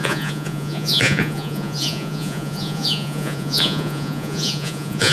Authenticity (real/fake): fake